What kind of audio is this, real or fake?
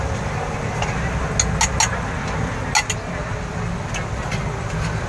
real